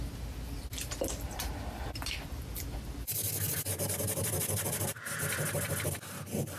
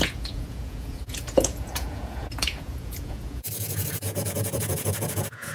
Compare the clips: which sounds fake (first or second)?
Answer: second